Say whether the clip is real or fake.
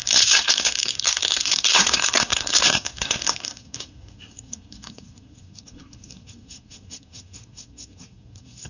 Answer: fake